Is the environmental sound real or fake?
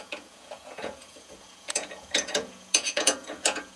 fake